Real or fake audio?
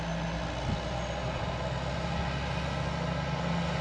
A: real